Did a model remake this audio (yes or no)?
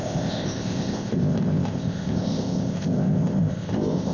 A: yes